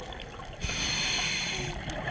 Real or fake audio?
real